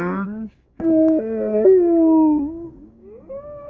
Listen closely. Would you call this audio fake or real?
fake